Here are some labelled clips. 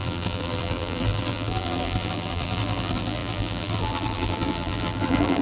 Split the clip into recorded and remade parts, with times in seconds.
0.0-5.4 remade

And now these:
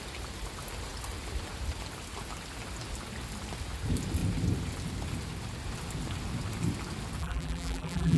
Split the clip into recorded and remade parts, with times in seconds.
0.0-7.2 recorded; 7.2-8.2 remade

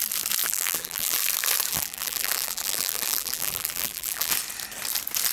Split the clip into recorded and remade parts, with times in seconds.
0.0-0.4 recorded; 0.4-1.2 remade; 1.2-1.7 recorded; 1.7-4.3 remade; 4.3-5.3 recorded

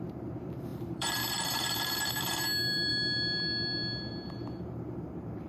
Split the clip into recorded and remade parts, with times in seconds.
0.0-2.9 remade; 2.9-4.1 recorded; 4.1-5.5 remade